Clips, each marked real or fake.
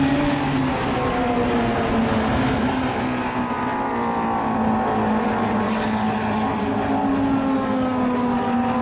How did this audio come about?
real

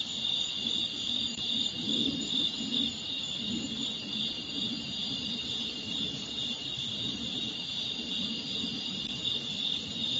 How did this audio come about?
fake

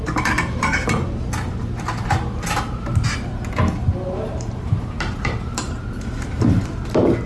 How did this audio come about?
fake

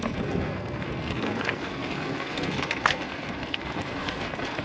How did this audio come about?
fake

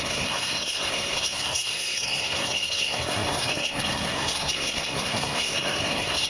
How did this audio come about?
fake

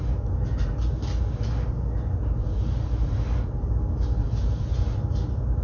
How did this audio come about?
real